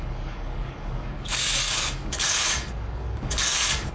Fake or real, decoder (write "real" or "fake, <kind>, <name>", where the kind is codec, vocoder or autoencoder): fake, codec, DAC